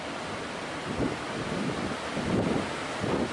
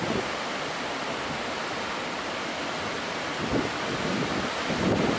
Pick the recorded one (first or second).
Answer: second